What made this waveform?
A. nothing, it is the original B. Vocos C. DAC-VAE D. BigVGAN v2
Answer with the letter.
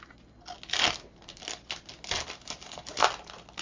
A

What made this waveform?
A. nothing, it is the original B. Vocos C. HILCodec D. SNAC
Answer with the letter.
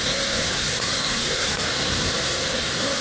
D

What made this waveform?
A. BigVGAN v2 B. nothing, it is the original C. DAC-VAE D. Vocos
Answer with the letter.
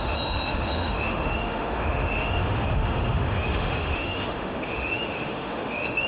C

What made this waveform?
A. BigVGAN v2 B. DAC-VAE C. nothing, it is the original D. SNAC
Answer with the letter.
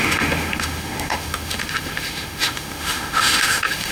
B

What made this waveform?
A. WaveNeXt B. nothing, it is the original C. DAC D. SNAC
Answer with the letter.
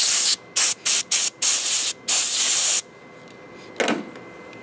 B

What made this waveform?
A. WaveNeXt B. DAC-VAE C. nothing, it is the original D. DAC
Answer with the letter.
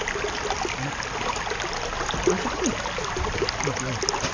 C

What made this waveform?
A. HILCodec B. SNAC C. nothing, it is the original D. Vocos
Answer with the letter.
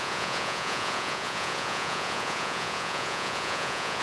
D